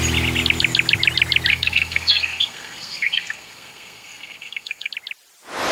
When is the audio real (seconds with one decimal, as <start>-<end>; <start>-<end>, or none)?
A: 0.0-1.5; 4.9-5.7